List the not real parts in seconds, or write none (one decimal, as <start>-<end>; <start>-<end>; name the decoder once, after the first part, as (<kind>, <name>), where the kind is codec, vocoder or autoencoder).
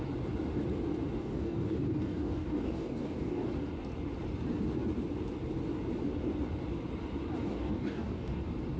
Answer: 1.2-3.5 (codec, DAC); 7.4-8.4